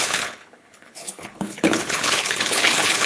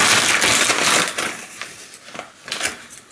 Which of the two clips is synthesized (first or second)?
first